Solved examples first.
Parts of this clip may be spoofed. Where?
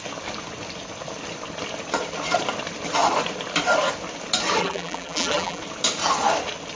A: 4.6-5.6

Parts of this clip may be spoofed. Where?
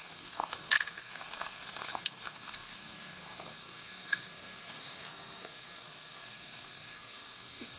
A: 0.0-7.8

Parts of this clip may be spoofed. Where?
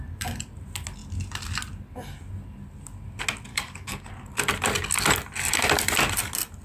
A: 3.5-4.1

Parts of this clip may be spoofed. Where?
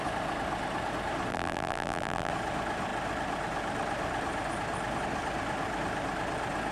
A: 1.3-2.3